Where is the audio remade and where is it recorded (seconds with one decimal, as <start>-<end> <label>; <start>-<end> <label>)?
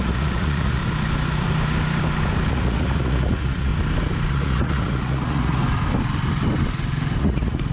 0.0-0.8 remade; 0.8-2.5 recorded; 2.5-3.7 remade; 3.7-4.3 recorded; 4.3-5.6 remade; 5.6-7.2 recorded; 7.2-7.7 remade